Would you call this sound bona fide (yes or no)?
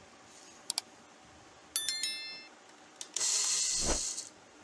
yes